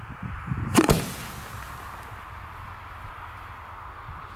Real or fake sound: real